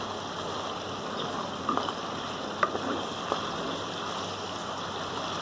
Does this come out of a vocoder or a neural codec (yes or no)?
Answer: yes